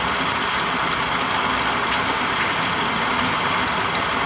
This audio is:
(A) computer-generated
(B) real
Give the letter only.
B